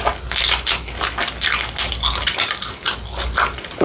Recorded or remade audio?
recorded